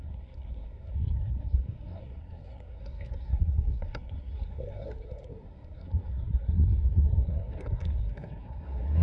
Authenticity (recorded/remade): remade